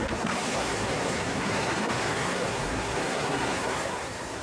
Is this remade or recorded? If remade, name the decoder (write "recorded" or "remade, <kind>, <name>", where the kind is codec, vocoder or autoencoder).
remade, codec, SNAC